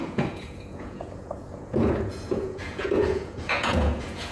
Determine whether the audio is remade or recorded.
remade